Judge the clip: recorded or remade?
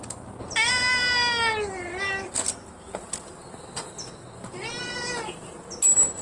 recorded